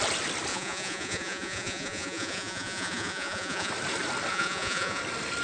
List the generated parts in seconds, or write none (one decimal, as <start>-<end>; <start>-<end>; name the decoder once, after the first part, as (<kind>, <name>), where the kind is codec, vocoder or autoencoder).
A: 0.5-3.7 (vocoder, Vocos); 4.3-5.0